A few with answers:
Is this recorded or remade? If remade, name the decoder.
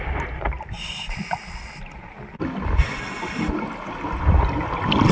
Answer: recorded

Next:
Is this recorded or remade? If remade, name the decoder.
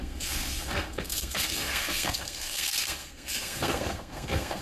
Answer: remade, codec, SNAC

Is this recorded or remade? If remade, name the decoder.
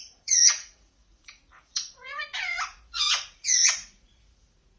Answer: remade, vocoder, Vocos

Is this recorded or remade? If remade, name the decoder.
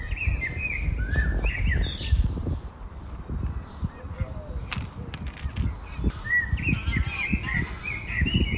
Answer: recorded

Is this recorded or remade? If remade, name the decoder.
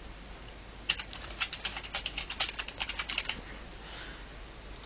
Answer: recorded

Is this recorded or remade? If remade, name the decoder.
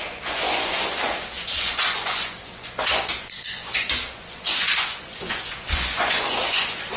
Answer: remade, vocoder, Vocos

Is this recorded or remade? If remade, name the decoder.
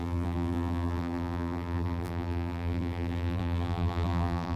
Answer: remade, vocoder, BigVGAN v2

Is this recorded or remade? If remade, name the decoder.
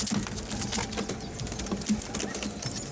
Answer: recorded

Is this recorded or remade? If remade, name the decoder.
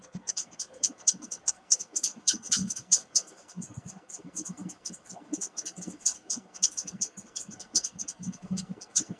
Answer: remade, codec, SNAC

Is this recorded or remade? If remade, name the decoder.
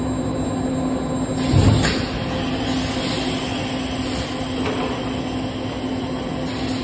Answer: recorded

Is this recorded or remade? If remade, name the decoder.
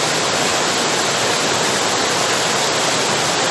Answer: recorded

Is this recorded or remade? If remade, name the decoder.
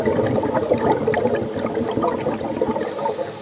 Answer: recorded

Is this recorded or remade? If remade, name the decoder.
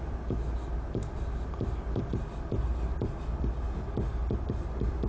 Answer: recorded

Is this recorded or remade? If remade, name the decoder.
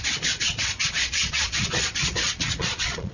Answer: remade, vocoder, Vocos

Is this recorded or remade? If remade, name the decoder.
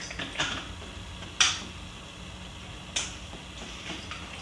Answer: recorded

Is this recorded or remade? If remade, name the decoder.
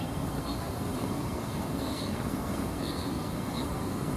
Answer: remade, codec, SNAC